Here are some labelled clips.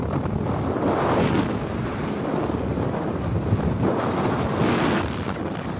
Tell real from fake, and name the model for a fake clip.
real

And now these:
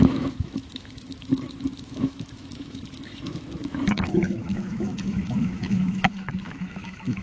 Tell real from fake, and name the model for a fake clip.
fake, autoencoder, DAC-VAE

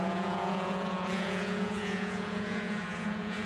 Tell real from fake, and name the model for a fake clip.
fake, vocoder, Vocos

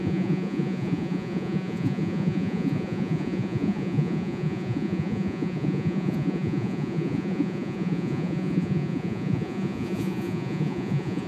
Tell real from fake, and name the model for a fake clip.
fake, vocoder, Vocos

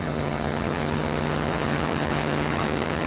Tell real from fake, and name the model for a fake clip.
fake, vocoder, HiFi-GAN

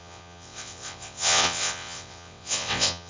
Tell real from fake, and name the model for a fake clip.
fake, vocoder, WaveNeXt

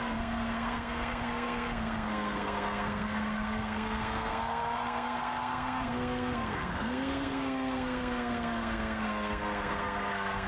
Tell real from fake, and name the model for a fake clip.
fake, codec, SNAC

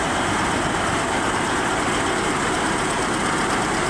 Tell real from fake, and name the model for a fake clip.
real